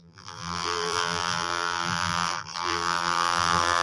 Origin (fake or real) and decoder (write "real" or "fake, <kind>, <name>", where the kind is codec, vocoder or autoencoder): fake, vocoder, BigVGAN v2